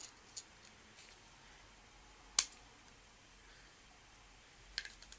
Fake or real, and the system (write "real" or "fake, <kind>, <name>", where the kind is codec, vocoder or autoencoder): real